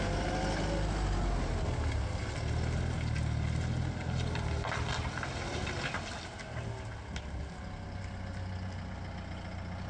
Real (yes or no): yes